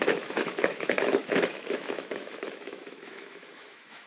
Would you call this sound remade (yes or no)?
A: yes